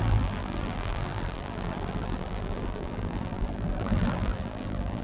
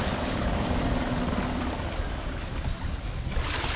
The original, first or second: second